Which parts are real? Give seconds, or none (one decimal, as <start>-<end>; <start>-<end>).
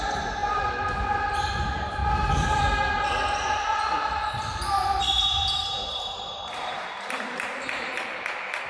0.4-1.3; 2.0-5.5